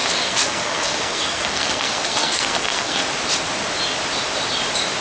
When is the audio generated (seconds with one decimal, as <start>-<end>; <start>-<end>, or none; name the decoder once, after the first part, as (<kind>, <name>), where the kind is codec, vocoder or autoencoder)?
0.0-3.0 (codec, SNAC)